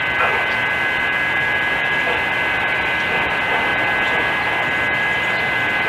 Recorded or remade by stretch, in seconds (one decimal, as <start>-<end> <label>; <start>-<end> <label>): 0.0-5.9 recorded